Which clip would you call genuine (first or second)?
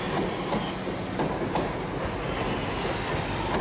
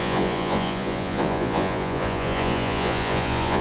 first